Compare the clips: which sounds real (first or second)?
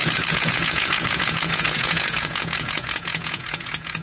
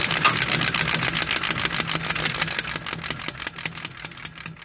second